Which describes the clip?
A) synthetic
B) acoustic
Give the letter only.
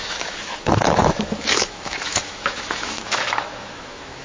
A